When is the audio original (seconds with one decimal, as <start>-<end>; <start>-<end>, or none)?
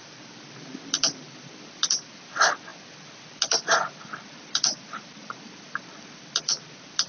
none